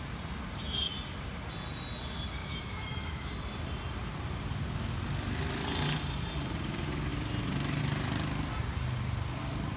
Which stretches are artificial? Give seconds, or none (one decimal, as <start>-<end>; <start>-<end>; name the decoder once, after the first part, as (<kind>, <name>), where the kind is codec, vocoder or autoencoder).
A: 2.4-3.3 (autoencoder, DAC-VAE)